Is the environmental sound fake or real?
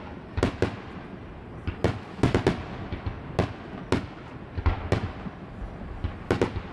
real